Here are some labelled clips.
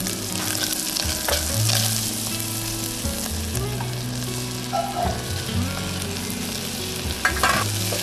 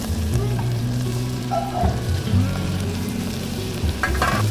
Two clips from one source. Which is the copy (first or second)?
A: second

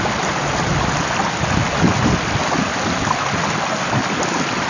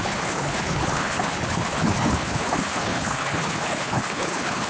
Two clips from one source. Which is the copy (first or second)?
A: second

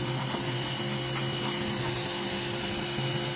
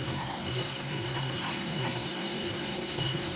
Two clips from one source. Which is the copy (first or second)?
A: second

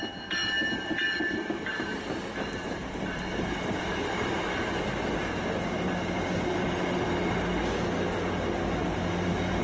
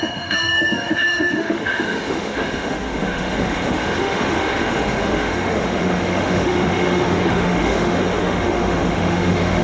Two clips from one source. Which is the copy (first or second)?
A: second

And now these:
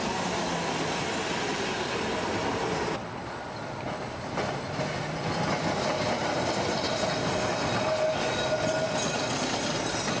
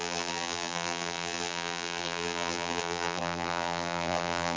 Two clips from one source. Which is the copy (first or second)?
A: second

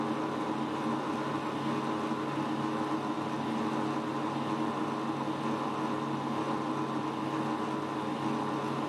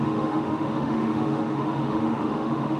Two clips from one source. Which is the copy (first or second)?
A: second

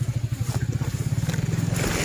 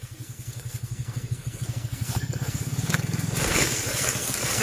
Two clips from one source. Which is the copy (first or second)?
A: second